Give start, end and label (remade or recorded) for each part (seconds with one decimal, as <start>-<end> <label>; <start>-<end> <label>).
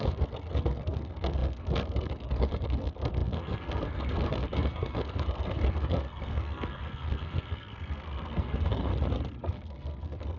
0.0-8.9 remade; 8.9-9.5 recorded; 9.5-10.4 remade